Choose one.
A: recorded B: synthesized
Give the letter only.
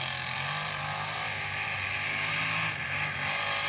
A